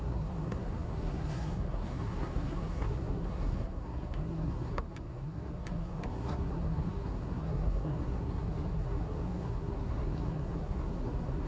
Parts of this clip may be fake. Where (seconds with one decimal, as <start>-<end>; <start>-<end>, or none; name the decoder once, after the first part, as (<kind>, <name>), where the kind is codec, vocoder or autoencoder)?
0.0-11.5 (codec, SNAC)